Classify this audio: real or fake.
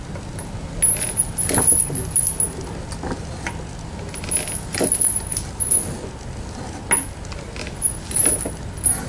real